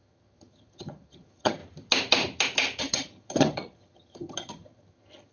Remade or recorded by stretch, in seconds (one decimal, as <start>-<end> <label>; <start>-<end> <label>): 0.0-1.6 remade; 1.6-2.8 recorded; 2.8-5.3 remade